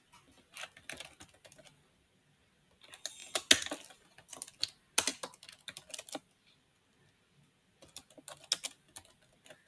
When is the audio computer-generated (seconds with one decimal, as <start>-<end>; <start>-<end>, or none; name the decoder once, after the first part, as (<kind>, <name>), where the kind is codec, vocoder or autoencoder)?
none